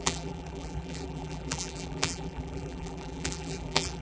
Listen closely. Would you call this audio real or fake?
fake